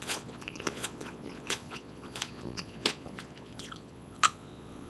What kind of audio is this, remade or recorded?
remade